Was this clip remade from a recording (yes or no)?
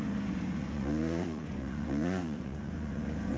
yes